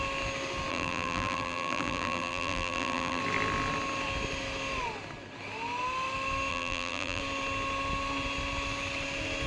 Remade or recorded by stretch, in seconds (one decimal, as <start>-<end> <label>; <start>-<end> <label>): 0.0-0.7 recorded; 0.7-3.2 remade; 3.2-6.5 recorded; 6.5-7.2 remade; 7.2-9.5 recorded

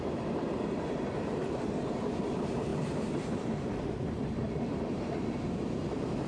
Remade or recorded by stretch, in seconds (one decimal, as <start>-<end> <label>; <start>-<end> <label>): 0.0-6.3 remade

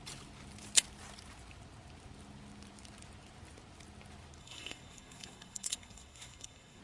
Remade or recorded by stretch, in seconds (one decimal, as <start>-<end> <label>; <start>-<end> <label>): 0.0-4.4 recorded; 4.4-6.8 remade